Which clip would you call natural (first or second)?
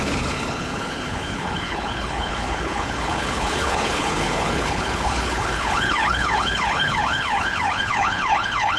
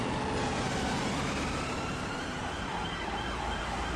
second